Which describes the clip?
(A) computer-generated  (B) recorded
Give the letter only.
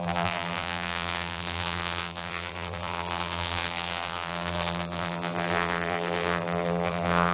A